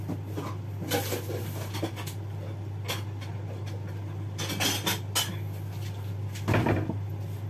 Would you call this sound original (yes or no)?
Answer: yes